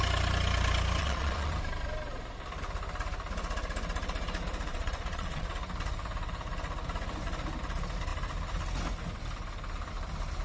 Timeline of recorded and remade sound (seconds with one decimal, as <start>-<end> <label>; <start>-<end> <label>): 0.0-1.0 recorded; 1.0-1.5 remade; 1.5-4.7 recorded; 4.7-5.5 remade; 5.5-10.4 recorded